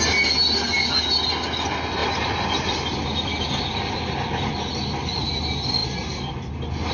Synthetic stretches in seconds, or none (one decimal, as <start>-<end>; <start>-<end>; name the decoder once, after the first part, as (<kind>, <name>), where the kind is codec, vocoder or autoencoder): none